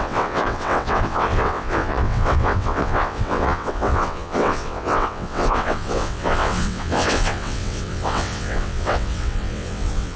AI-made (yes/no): yes